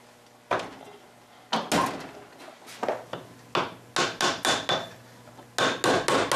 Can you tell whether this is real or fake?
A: real